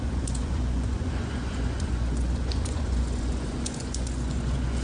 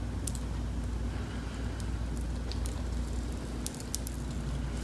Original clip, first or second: second